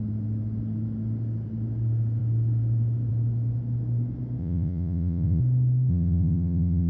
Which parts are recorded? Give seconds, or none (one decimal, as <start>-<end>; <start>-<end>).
0.0-4.4; 5.4-5.9